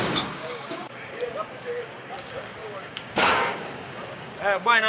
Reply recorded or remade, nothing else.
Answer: remade